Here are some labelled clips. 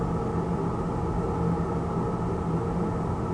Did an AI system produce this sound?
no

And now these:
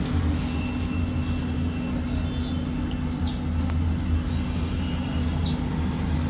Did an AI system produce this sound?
no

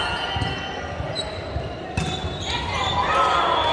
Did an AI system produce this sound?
no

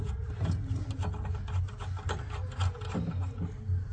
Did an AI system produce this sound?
no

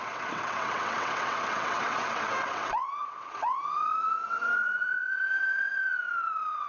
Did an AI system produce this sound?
yes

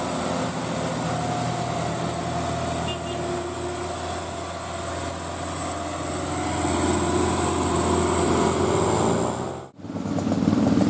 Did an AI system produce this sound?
no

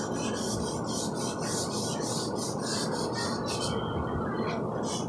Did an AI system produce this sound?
no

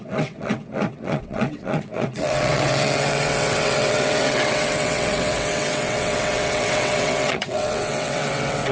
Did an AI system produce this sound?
yes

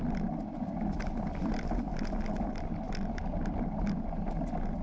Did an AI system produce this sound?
no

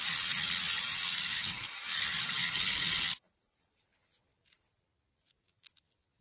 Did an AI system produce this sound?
no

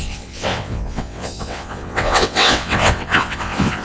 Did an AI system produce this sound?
yes